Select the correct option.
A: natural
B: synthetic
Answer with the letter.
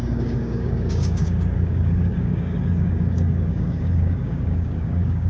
B